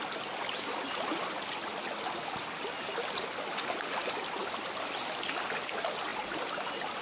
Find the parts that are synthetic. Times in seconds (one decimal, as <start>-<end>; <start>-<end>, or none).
none